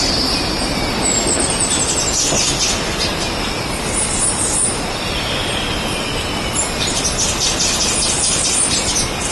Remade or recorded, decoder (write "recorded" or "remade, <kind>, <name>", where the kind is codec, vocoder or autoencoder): remade, vocoder, BigVGAN v2